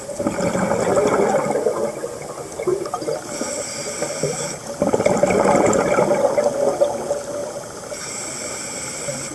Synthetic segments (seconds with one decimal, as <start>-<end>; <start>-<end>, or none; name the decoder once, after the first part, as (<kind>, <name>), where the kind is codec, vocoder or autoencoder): none